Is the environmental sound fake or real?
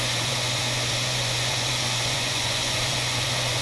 fake